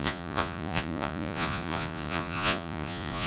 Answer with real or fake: fake